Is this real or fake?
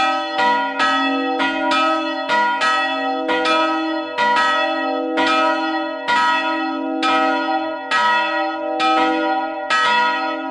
real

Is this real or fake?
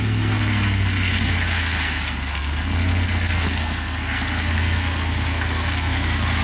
fake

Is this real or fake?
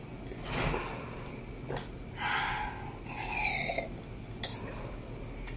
real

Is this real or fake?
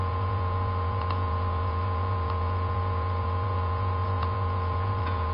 fake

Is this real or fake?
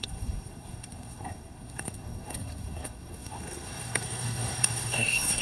fake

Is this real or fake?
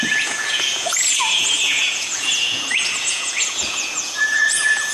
fake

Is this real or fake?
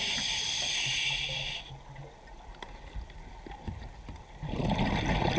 real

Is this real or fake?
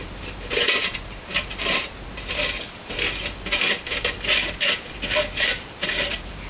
real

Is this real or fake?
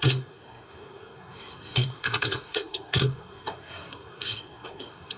fake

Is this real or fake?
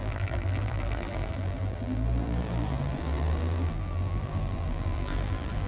fake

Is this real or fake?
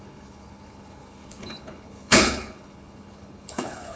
fake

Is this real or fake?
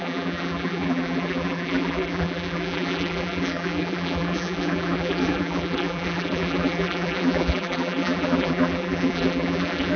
fake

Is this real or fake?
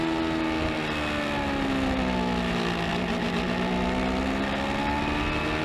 real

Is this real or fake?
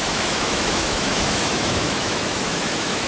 fake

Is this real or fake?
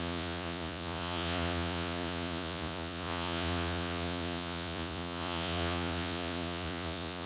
fake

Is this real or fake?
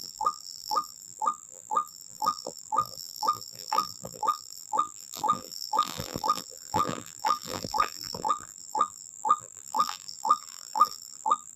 fake